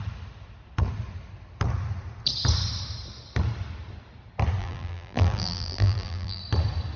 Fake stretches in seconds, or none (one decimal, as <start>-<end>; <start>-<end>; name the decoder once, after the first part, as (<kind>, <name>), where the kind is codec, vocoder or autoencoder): 4.6-6.4 (vocoder, BigVGAN v2)